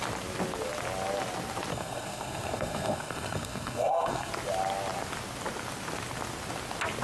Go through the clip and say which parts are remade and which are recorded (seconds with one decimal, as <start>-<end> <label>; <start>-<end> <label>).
0.0-1.7 recorded; 1.7-4.3 remade; 4.3-7.0 recorded